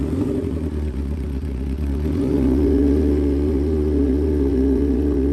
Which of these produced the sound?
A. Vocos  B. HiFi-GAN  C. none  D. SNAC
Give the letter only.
A